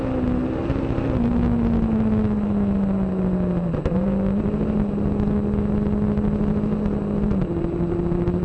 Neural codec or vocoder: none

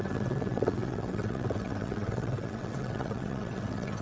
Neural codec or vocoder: vocoder, WaveNeXt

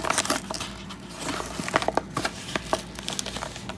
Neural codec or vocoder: none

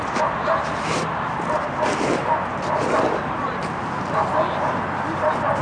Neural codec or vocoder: none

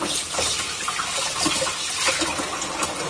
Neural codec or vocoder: none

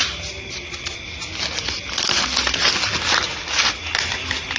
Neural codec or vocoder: none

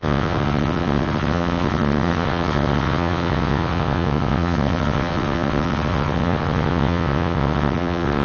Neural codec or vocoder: vocoder, WaveNeXt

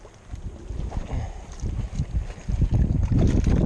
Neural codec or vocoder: none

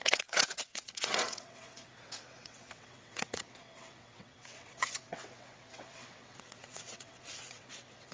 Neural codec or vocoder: vocoder, WaveNeXt